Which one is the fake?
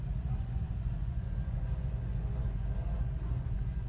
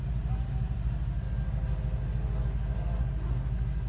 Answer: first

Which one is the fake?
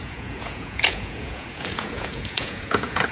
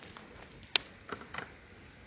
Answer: first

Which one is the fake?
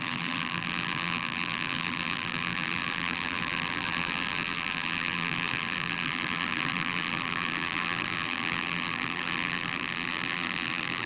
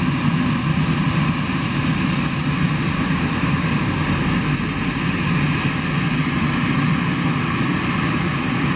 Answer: first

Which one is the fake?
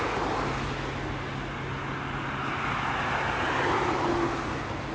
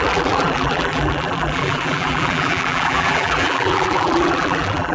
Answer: second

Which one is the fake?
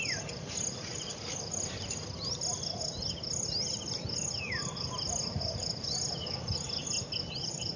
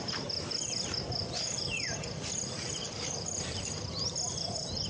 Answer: second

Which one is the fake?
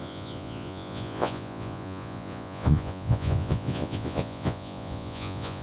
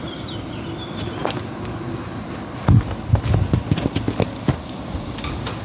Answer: first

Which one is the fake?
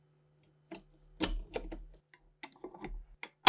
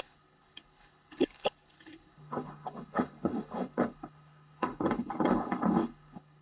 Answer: second